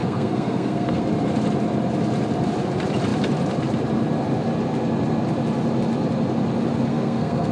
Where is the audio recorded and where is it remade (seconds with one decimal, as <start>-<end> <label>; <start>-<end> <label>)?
0.0-1.0 remade; 1.0-6.9 recorded; 6.9-7.5 remade